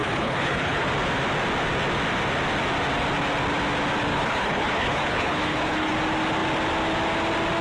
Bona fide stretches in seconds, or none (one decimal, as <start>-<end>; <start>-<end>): 0.9-4.1; 5.9-7.6